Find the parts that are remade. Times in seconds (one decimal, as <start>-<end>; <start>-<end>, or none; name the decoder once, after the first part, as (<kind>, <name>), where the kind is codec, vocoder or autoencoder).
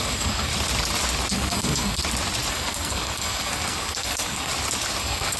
0.0-0.5 (codec, SNAC); 1.3-2.0; 2.5-4.5; 5.0-5.4